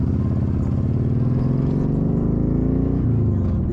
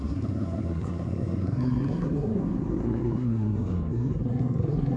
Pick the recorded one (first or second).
first